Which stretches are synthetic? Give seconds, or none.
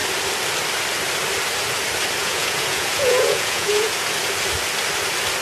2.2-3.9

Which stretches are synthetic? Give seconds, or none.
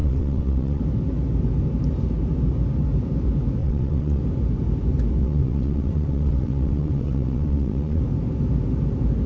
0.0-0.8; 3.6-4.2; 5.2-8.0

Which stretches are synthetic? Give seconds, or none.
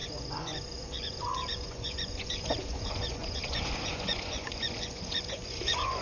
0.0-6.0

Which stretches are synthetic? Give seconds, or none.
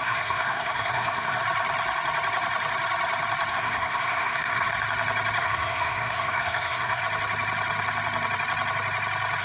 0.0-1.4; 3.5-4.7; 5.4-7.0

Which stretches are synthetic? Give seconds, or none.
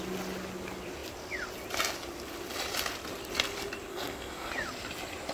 3.9-4.5